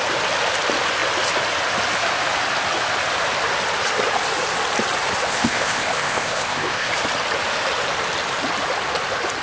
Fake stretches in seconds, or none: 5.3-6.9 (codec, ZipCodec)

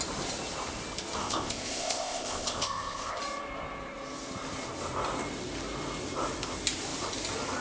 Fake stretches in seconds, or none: 1.2-3.2 (codec, ZipCodec)

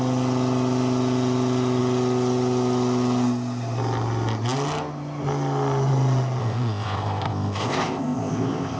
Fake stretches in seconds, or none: 6.4-8.8 (codec, ZipCodec)